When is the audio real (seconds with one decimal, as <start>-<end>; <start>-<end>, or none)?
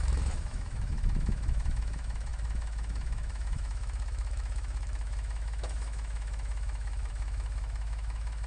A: none